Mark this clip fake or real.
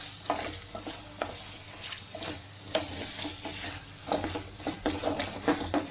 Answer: real